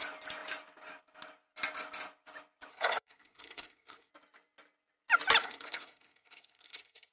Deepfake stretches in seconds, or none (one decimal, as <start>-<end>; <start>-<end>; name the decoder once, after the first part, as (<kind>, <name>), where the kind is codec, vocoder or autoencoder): 2.7-4.1 (codec, SNAC); 5.4-7.1